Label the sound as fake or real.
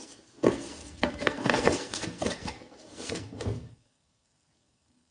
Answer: fake